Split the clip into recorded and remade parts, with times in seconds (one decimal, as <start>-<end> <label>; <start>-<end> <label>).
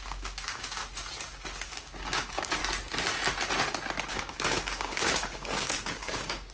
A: 0.0-0.8 remade; 0.8-1.7 recorded; 1.7-2.6 remade; 2.6-4.1 recorded; 4.1-6.5 remade